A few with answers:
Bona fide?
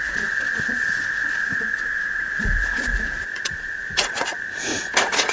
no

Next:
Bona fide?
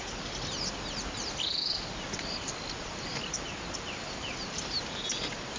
yes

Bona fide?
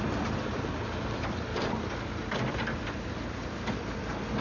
yes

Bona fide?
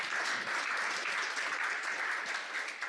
yes